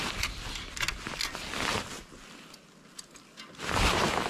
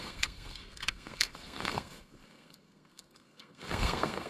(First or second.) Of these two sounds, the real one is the first